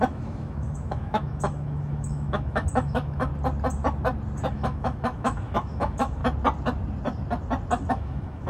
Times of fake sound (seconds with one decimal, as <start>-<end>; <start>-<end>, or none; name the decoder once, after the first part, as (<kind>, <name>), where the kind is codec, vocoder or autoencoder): 0.0-3.3 (autoencoder, DAC-VAE); 4.5-6.2; 7.9-8.5